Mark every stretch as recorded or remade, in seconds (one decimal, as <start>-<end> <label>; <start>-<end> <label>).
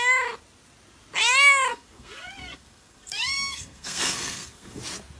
0.0-1.7 recorded; 1.7-4.8 remade; 4.8-5.2 recorded